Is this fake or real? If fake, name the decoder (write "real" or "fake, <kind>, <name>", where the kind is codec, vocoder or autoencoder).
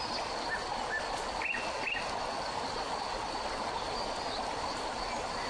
real